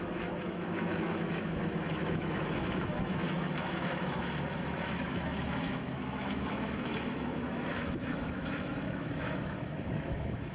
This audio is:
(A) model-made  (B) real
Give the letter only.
A